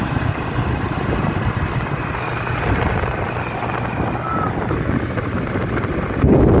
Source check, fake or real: real